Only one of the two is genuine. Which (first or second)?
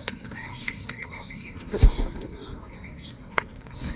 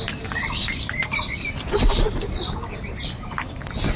second